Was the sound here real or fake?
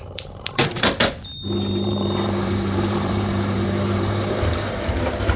fake